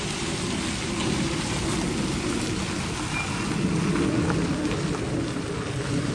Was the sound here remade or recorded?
recorded